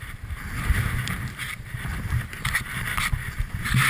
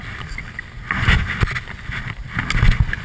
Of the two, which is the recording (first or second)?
second